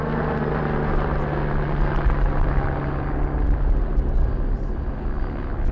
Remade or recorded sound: recorded